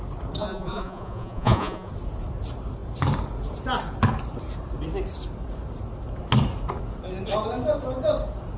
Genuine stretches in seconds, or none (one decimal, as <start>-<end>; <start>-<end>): 0.0-0.4; 1.9-8.6